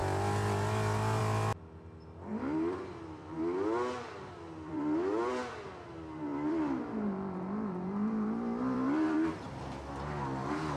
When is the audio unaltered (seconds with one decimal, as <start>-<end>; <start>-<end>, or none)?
0.0-2.3; 5.6-6.3; 9.5-10.8